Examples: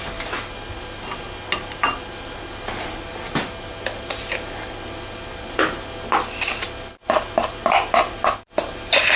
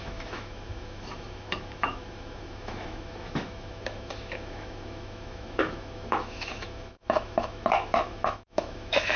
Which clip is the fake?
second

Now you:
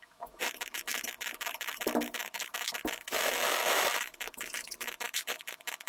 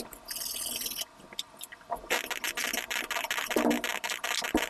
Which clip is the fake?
first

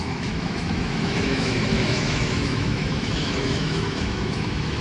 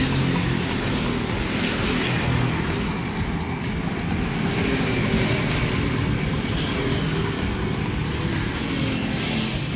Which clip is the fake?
first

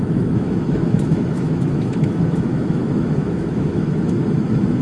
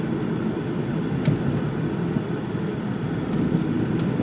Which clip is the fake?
first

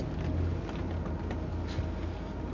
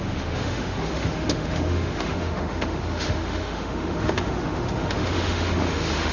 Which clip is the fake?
second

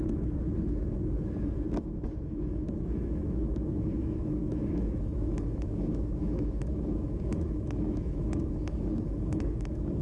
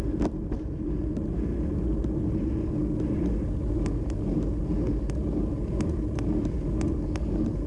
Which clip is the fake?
first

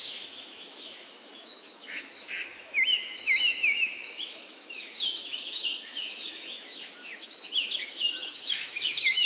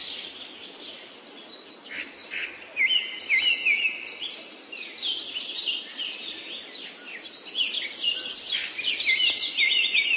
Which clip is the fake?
first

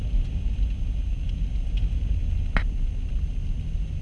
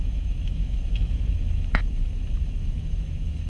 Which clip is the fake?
second